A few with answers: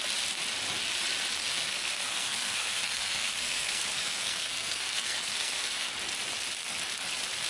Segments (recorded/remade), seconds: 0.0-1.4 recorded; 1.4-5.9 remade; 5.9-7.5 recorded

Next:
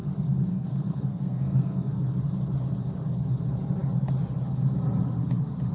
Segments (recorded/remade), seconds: 0.0-0.5 recorded; 0.5-2.0 remade; 2.0-5.7 recorded

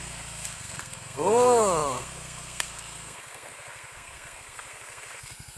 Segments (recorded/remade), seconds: 0.0-5.6 remade

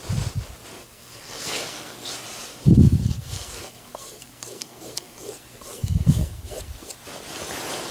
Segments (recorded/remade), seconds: 0.0-0.7 recorded; 0.7-2.1 remade; 2.1-2.5 recorded; 2.5-6.9 remade; 6.9-7.9 recorded

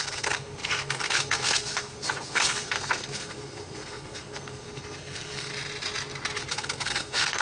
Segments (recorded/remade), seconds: 0.0-5.5 remade; 5.5-6.5 recorded; 6.5-7.4 remade

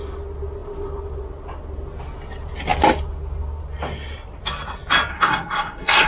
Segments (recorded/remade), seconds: 0.0-5.1 recorded; 5.1-6.1 remade

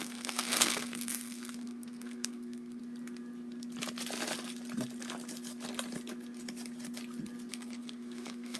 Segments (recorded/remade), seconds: 0.0-2.8 remade; 2.8-7.5 recorded; 7.5-8.6 remade

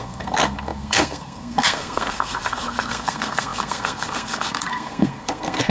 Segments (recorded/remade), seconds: 0.0-5.7 remade